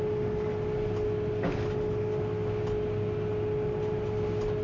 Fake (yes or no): no